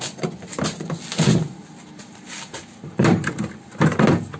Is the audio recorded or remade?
recorded